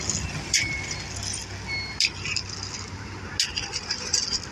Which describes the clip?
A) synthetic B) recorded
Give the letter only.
B